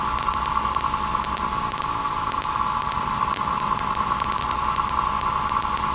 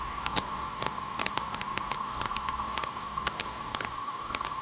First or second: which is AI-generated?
second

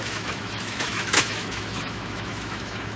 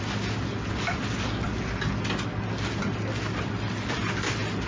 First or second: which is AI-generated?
first